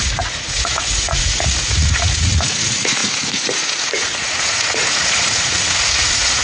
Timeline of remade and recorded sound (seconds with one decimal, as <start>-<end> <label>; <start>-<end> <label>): 0.0-6.4 remade